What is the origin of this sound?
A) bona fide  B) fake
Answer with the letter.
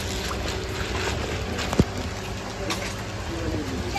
A